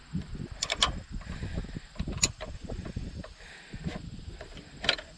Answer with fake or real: real